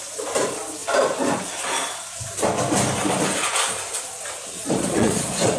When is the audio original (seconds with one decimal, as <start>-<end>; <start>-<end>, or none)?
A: 0.0-4.6